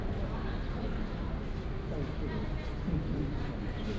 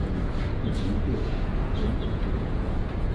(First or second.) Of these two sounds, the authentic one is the first